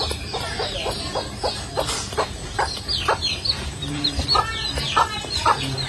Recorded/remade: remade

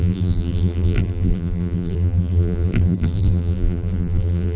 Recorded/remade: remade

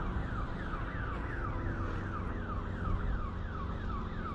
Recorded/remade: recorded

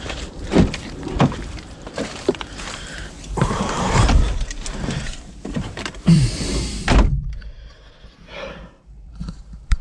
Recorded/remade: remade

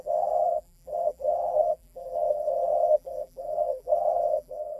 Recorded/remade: remade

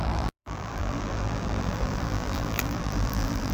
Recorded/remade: remade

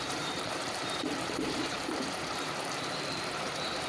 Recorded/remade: remade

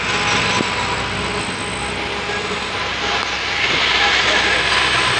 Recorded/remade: recorded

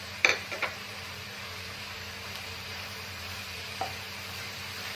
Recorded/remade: remade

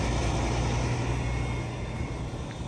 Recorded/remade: recorded